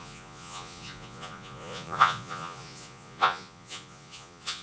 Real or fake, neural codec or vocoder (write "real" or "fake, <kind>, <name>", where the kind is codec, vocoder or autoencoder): fake, vocoder, Vocos